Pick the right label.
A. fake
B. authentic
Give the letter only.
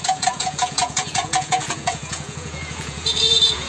A